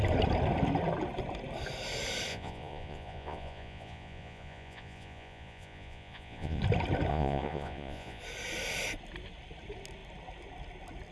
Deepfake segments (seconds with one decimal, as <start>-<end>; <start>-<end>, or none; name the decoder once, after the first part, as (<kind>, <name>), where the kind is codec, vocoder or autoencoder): 2.3-6.6 (vocoder, Vocos); 7.1-8.2